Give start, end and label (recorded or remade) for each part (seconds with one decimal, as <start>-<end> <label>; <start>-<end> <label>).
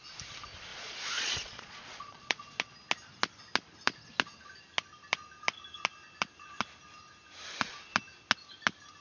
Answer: 0.0-0.7 recorded; 0.7-2.6 remade; 2.6-9.0 recorded